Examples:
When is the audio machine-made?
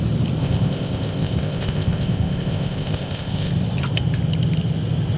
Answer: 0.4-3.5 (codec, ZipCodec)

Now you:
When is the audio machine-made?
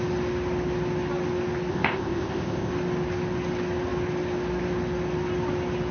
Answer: 1.7-2.7 (codec, ZipCodec)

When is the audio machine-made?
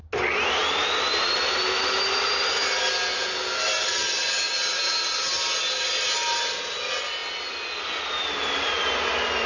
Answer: none